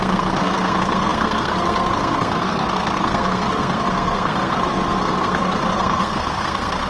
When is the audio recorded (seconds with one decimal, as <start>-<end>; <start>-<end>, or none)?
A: none